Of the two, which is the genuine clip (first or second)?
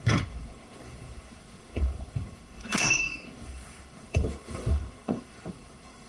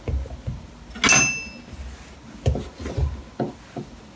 second